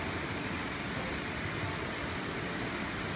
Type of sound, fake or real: real